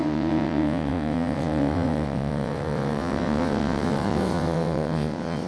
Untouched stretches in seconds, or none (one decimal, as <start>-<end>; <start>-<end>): none